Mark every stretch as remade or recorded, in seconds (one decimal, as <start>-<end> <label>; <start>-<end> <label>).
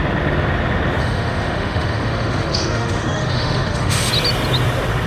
0.0-1.0 recorded; 1.0-4.1 remade; 4.1-5.1 recorded